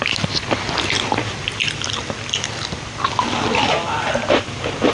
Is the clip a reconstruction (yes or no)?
yes